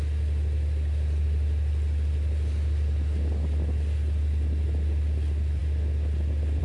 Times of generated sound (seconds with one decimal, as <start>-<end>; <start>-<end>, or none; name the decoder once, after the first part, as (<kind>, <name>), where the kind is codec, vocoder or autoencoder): none